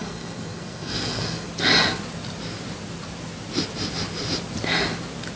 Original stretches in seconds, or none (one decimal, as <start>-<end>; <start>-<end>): 1.5-5.4